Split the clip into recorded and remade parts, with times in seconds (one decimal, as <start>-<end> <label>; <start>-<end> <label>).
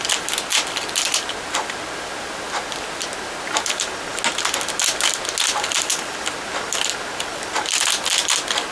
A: 0.0-8.7 recorded